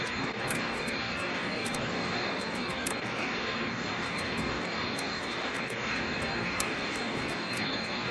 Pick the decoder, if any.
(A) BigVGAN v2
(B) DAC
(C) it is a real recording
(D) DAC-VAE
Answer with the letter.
B